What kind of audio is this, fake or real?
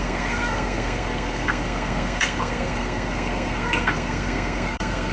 fake